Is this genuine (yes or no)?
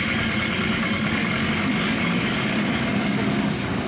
no